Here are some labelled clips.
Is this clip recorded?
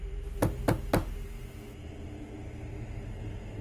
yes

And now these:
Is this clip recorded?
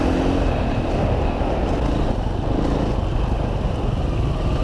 yes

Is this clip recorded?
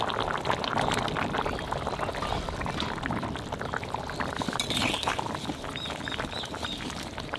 yes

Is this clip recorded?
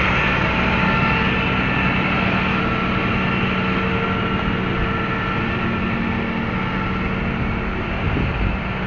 yes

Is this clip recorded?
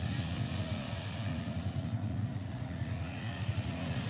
no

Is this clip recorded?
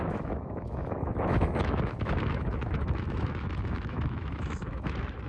no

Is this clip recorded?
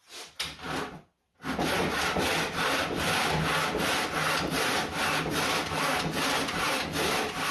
yes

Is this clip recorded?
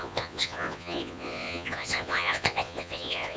no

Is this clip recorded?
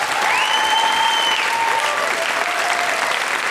yes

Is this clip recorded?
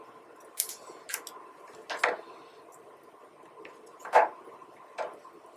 yes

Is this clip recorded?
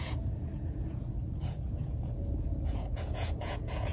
no